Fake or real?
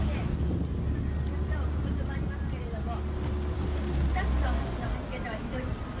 real